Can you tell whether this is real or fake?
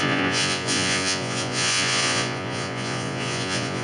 fake